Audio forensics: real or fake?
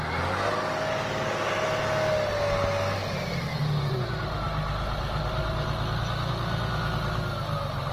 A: real